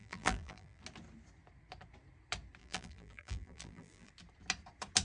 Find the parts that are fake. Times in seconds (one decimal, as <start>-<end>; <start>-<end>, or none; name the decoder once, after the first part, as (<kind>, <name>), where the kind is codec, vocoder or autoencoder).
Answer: 0.0-0.8 (vocoder, BigVGAN v2); 2.6-4.1